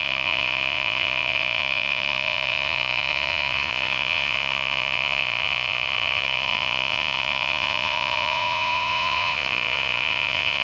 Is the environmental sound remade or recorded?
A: remade